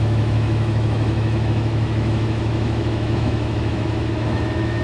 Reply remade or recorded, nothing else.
remade